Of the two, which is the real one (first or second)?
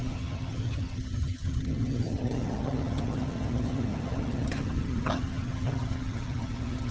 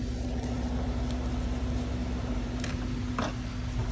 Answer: second